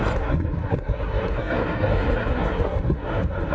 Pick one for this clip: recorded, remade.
remade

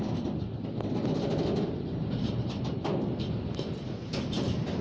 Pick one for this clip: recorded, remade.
recorded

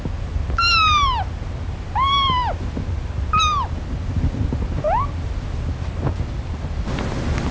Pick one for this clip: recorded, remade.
recorded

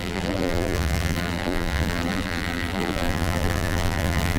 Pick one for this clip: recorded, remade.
remade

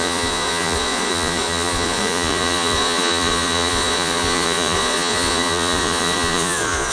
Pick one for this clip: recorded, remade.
remade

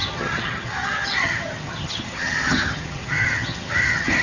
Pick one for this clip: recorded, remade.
remade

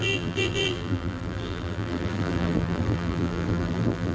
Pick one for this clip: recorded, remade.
remade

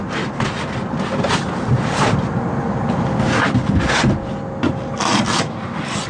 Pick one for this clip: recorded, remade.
recorded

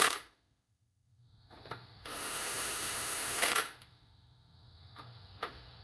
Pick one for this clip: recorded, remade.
remade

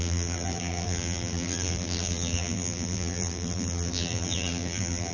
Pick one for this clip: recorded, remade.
remade